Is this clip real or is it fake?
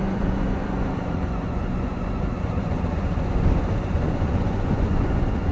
fake